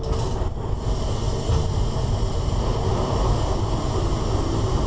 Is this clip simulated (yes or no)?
no